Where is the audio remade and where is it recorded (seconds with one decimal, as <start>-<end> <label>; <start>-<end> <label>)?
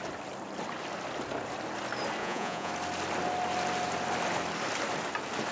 0.0-2.2 recorded; 2.2-2.7 remade; 2.7-5.5 recorded